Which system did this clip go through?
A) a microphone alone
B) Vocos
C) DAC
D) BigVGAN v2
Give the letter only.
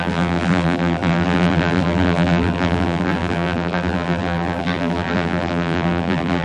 D